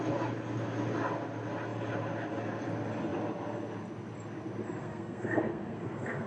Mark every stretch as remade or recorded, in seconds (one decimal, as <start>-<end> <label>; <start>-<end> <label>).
0.0-4.8 recorded; 4.8-6.3 remade